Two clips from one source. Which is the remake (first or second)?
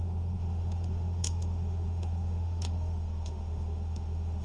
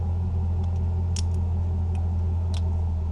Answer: first